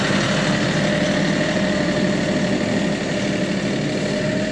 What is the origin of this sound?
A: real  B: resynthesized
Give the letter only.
A